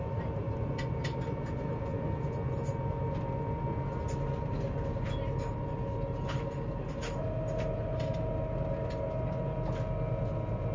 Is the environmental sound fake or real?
real